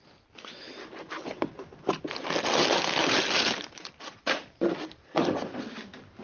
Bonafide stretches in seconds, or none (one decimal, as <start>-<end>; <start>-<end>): 0.0-3.8; 4.4-5.0; 5.6-6.2